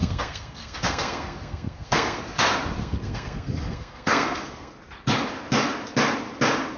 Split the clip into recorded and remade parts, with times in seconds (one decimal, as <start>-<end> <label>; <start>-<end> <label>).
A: 0.0-2.2 remade; 2.2-2.8 recorded; 2.8-4.7 remade; 4.7-6.8 recorded